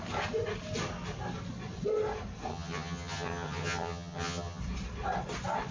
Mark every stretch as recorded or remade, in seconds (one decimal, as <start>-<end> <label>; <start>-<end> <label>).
0.0-2.5 recorded; 2.5-4.6 remade; 4.6-5.7 recorded